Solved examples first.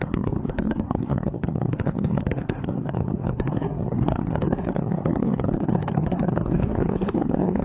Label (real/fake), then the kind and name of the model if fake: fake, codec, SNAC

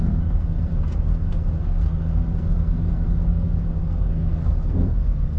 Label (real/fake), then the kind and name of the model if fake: fake, codec, SNAC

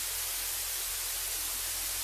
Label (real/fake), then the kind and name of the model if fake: real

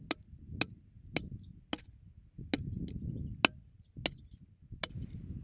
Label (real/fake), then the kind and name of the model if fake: real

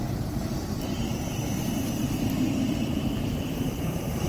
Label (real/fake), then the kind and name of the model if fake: fake, vocoder, BigVGAN v2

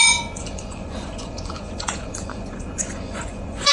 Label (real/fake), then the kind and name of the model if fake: fake, vocoder, Vocos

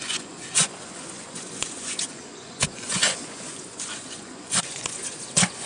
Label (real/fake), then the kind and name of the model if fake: fake, vocoder, Vocos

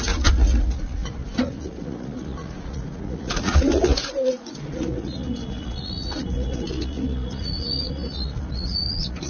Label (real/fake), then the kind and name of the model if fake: fake, vocoder, Vocos